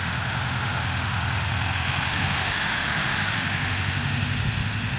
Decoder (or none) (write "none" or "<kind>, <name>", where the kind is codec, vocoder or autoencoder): autoencoder, DAC-VAE